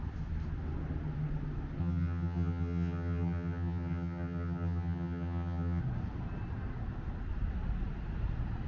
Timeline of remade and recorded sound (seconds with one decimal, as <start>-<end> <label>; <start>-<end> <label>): 0.0-1.8 recorded; 1.8-5.8 remade; 5.8-8.7 recorded